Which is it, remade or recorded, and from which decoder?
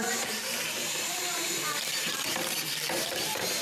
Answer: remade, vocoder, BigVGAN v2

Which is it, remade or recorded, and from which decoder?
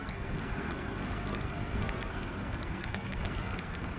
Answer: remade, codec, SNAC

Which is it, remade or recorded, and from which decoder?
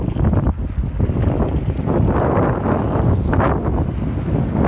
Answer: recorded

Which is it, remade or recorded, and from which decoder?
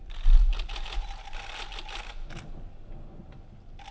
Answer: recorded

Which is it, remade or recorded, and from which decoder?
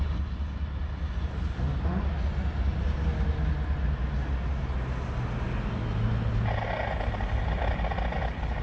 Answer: recorded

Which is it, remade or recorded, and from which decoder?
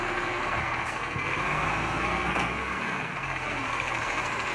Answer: remade, codec, SNAC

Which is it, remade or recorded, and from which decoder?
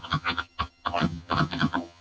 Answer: remade, vocoder, HiFi-GAN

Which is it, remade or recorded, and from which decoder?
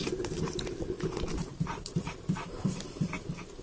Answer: remade, vocoder, BigVGAN v2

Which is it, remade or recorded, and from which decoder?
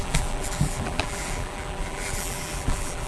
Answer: remade, vocoder, BigVGAN v2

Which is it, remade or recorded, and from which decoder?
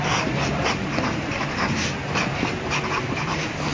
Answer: recorded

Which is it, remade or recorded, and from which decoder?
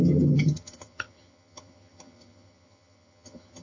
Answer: remade, vocoder, HiFi-GAN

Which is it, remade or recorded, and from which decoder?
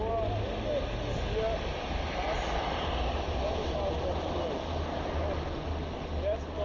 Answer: recorded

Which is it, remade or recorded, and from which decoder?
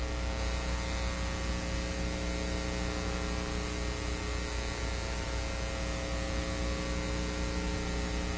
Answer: recorded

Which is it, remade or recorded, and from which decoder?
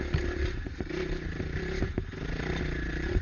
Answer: recorded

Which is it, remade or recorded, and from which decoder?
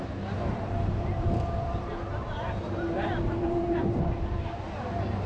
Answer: remade, vocoder, BigVGAN v2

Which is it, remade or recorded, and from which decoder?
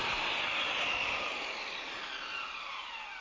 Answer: recorded